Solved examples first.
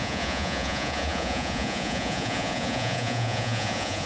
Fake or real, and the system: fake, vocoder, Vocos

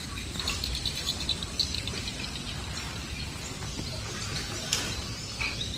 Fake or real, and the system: real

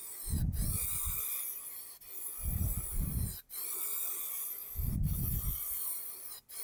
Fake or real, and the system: real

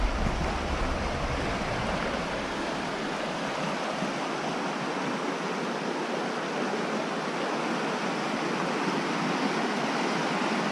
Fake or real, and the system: real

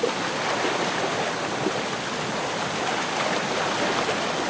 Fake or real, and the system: real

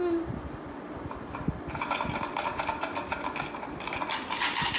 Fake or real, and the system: real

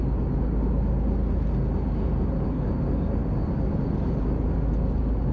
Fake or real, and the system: real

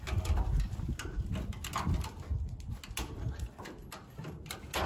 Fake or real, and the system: real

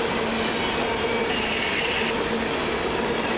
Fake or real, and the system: real